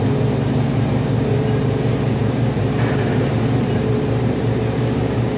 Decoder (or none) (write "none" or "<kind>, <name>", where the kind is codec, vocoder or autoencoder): vocoder, BigVGAN v2